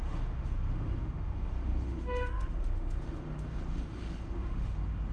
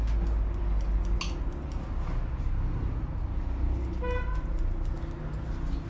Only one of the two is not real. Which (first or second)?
first